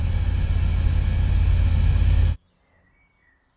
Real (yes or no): yes